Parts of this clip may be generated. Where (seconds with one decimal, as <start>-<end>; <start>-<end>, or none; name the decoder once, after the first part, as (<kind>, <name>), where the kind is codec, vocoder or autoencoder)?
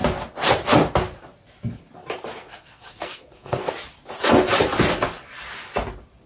2.3-3.7 (codec, SNAC)